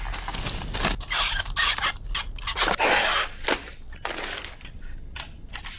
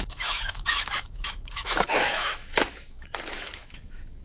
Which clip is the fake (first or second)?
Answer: second